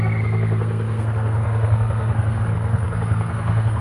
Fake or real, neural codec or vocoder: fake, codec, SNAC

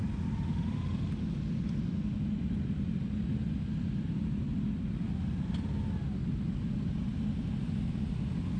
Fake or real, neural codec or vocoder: real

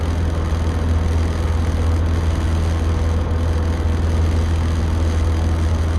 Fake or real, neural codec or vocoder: real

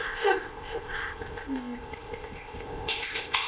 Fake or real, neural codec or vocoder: fake, codec, ZipCodec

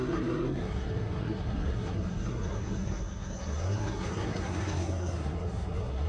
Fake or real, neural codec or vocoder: fake, codec, SNAC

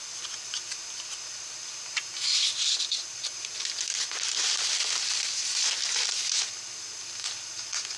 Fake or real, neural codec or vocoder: real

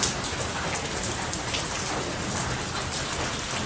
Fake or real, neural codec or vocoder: real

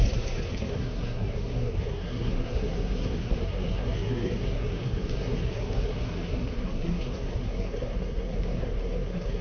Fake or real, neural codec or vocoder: fake, codec, SNAC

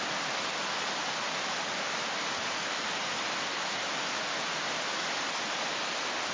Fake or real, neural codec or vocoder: real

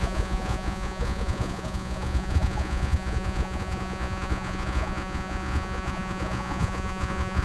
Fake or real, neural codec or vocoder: fake, vocoder, Vocos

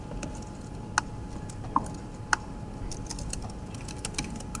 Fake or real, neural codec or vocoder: real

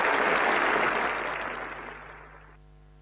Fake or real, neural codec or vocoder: real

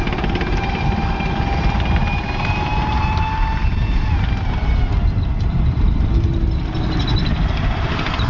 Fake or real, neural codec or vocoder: real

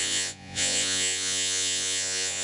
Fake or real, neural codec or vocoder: fake, vocoder, Vocos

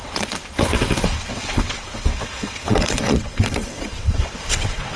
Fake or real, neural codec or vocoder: fake, vocoder, WaveNeXt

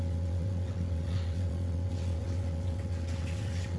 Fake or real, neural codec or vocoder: fake, vocoder, WaveNeXt